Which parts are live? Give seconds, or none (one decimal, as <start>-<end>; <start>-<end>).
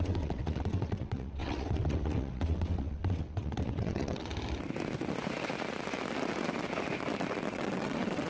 4.3-7.5